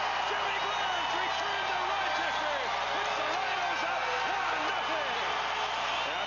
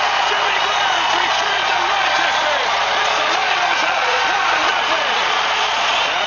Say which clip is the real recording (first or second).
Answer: first